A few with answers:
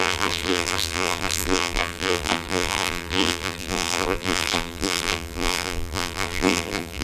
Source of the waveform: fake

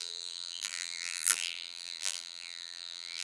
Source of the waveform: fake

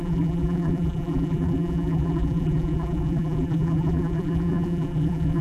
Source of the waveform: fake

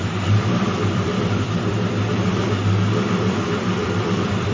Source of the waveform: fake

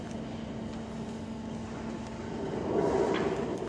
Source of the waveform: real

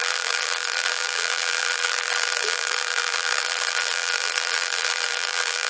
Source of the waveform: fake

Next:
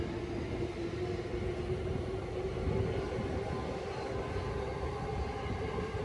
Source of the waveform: real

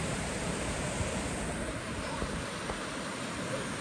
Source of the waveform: fake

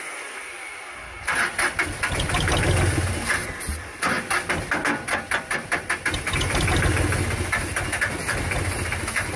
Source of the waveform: real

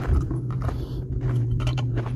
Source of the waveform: fake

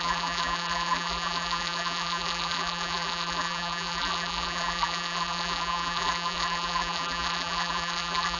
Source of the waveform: fake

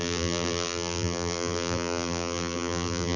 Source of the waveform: fake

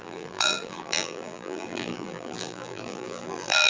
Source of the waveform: fake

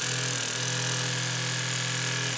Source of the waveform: real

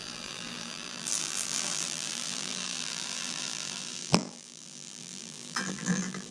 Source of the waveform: fake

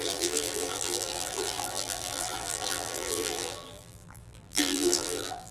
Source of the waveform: fake